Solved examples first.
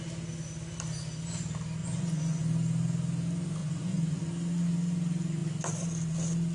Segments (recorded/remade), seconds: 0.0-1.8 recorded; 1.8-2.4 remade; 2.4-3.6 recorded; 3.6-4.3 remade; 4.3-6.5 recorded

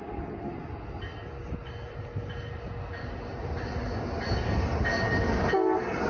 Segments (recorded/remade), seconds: 0.0-6.1 recorded

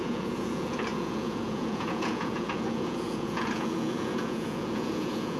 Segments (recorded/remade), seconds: 0.0-5.4 remade

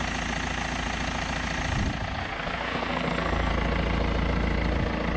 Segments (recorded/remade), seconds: 0.0-2.2 recorded; 2.2-3.5 remade; 3.5-5.2 recorded

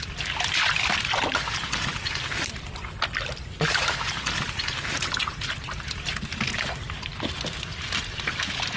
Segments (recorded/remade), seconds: 0.0-8.8 recorded

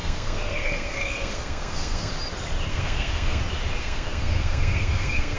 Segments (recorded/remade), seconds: 0.0-2.1 remade; 2.1-2.7 recorded; 2.7-3.4 remade; 3.4-3.8 recorded; 3.8-5.4 remade

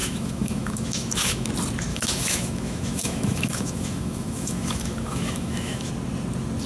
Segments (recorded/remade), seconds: 0.0-1.5 remade; 1.5-1.9 recorded; 1.9-5.9 remade; 5.9-6.7 recorded

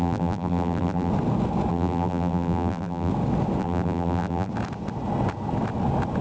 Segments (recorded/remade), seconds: 0.0-1.1 remade; 1.1-1.7 recorded; 1.7-3.1 remade; 3.1-3.6 recorded; 3.6-4.5 remade; 4.5-6.2 recorded